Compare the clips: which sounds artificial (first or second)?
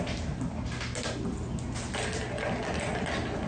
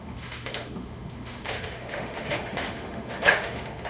second